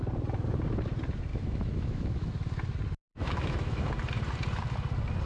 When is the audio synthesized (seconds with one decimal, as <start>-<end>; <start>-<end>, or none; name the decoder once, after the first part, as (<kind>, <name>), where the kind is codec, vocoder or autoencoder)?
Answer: 1.3-2.3 (autoencoder, DAC-VAE); 3.1-3.8